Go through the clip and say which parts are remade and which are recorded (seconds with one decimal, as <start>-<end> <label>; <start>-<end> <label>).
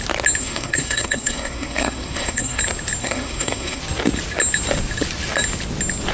0.0-0.4 recorded; 0.4-2.6 remade; 2.6-3.0 recorded; 3.0-3.8 remade; 3.8-6.1 recorded